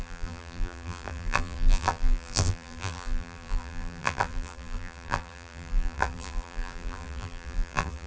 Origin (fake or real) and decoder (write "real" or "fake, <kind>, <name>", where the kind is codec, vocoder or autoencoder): fake, vocoder, BigVGAN v2